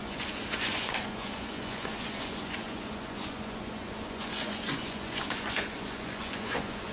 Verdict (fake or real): fake